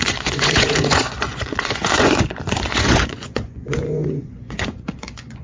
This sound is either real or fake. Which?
fake